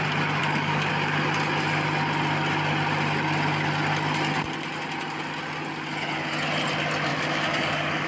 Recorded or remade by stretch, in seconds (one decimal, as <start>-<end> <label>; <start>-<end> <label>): 0.0-0.4 recorded; 0.4-0.9 remade; 0.9-7.1 recorded; 7.1-8.1 remade